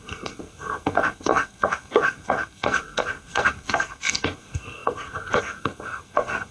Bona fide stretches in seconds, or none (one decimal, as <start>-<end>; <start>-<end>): none